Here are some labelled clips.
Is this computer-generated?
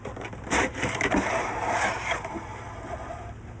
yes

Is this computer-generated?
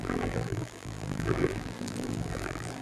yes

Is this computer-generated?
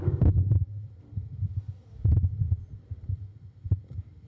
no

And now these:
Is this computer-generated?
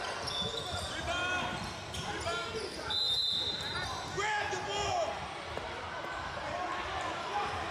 no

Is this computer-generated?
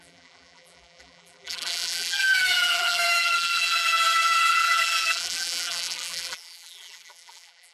yes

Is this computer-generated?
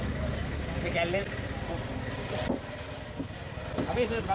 no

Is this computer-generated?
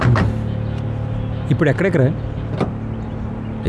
no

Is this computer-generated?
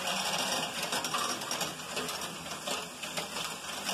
no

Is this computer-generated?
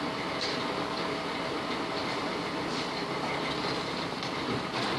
no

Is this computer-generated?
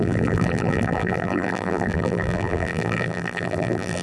yes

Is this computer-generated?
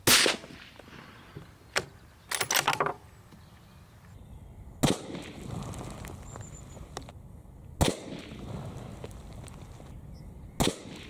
no